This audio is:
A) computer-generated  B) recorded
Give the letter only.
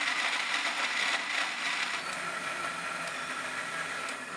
A